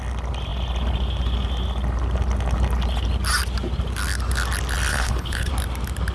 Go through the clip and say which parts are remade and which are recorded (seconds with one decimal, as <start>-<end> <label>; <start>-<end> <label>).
0.0-4.9 recorded; 4.9-5.5 remade; 5.5-6.1 recorded